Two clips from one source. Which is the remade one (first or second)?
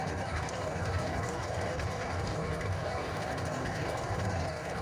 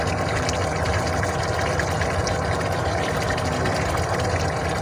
first